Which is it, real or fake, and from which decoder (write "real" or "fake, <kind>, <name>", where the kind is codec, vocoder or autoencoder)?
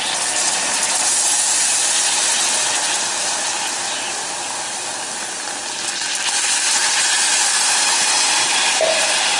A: real